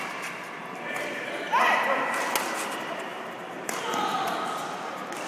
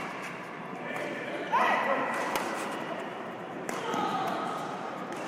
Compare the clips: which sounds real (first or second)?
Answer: first